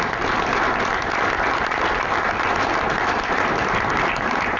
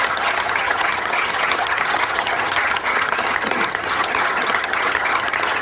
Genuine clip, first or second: first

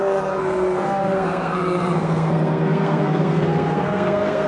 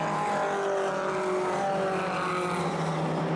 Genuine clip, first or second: second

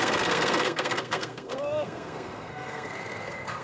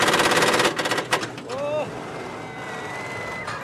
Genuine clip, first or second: second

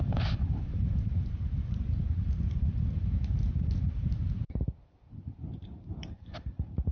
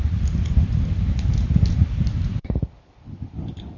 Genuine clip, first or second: second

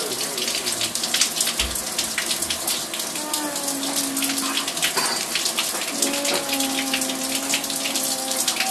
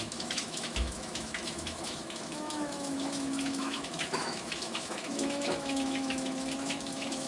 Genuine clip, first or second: first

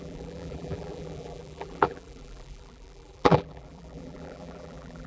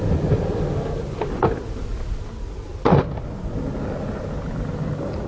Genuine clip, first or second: second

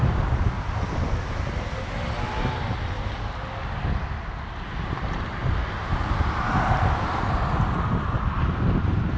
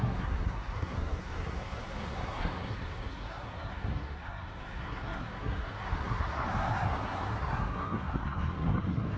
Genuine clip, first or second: first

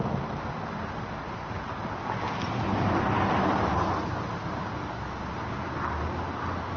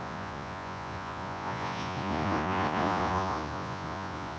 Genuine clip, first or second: first